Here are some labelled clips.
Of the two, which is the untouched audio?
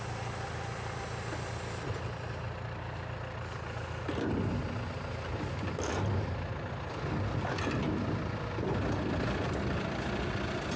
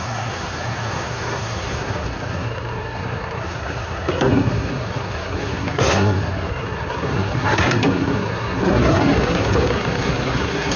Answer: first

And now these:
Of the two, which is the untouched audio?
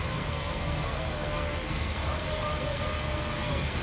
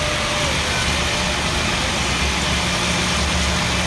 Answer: second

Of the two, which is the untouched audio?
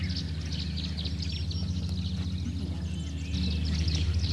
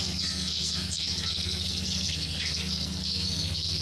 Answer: first